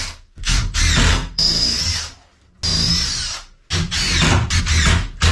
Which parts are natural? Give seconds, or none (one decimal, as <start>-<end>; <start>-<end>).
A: 0.6-1.1; 1.8-5.3